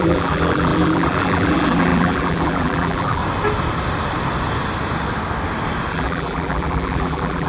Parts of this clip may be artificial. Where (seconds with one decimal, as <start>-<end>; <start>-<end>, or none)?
0.0-3.2; 5.9-7.5